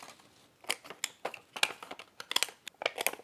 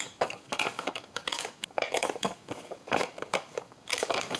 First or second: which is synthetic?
second